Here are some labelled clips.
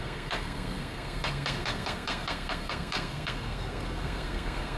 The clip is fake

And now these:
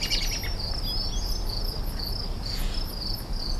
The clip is real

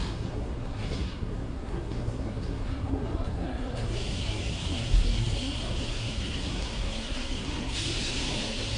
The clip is fake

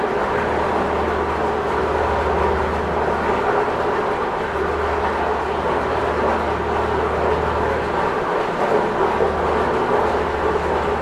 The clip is real